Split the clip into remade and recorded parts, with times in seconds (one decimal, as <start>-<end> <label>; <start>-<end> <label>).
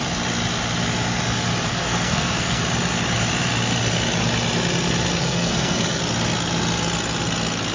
0.0-1.7 recorded; 1.7-2.6 remade; 2.6-5.2 recorded; 5.2-6.0 remade; 6.0-7.7 recorded